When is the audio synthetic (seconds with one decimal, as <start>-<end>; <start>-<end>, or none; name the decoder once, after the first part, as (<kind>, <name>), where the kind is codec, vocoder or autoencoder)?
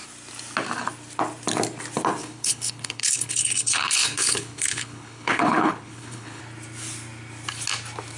2.2-6.4 (codec, HILCodec)